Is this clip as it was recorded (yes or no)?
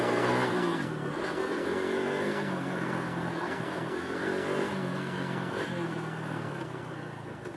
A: no